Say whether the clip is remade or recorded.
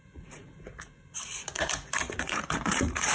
remade